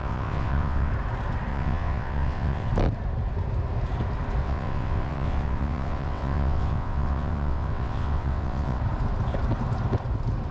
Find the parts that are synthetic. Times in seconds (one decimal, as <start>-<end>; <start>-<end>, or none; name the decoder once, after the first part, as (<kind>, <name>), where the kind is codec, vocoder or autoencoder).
0.0-0.9 (vocoder, WaveNeXt); 1.5-2.7; 4.4-8.8